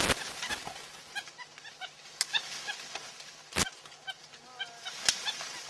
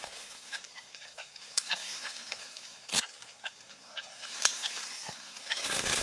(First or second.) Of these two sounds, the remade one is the second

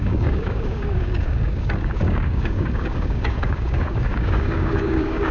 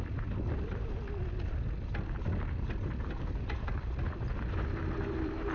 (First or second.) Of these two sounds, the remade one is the first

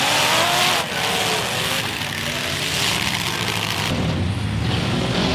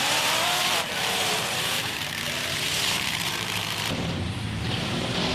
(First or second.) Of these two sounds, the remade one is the second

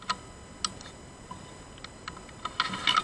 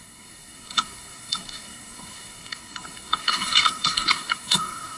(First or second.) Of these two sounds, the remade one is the second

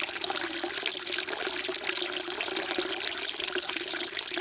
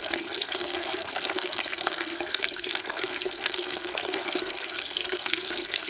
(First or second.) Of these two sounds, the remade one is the second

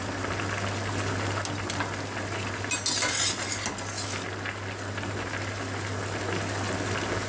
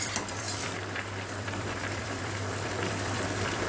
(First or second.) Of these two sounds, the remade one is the second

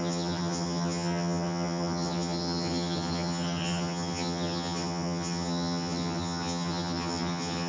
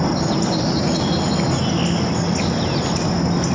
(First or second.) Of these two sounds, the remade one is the first